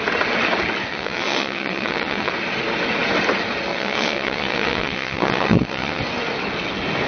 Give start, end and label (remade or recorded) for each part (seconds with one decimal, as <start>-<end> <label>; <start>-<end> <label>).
0.0-0.9 recorded; 0.9-2.3 remade; 2.3-3.7 recorded; 3.7-6.0 remade; 6.0-7.1 recorded